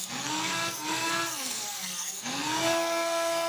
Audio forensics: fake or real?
fake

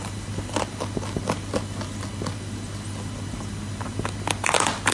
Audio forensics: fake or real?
real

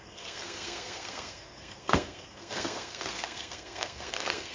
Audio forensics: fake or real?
fake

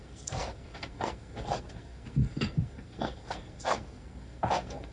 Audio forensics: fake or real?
fake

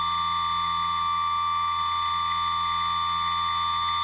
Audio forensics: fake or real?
real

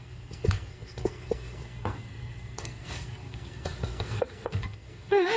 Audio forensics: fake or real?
fake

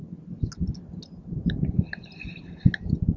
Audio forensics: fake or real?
real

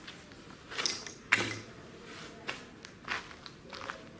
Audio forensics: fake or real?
real